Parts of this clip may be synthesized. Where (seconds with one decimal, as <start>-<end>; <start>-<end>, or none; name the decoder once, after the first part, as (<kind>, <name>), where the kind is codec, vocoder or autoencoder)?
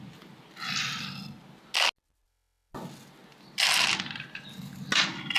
none